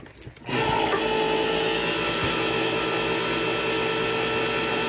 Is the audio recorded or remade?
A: recorded